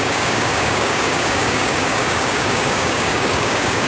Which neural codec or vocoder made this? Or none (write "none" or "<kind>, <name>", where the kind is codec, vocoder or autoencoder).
codec, DAC